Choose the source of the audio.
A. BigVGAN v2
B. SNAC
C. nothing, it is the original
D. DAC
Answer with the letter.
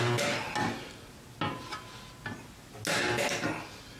C